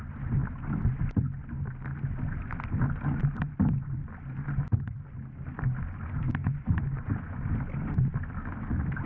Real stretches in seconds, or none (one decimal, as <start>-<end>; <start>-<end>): 0.0-6.4; 7.1-9.1